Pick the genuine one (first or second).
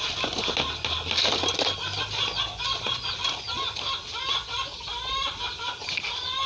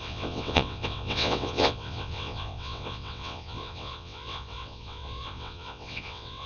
first